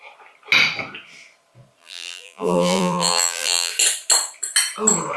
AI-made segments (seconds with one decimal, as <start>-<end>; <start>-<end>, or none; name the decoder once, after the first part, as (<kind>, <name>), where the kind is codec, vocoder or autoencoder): 1.8-3.7 (vocoder, BigVGAN v2)